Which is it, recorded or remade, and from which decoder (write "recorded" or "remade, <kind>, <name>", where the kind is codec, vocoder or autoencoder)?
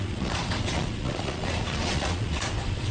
remade, vocoder, Vocos